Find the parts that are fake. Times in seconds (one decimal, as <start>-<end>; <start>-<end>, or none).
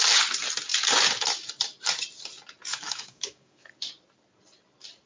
2.7-3.7